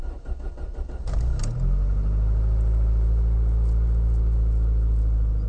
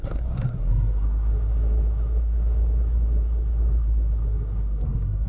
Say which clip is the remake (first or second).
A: second